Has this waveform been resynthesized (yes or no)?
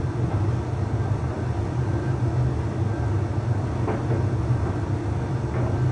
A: no